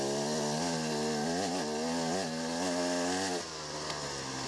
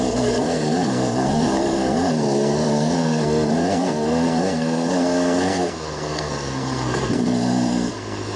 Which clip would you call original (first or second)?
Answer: first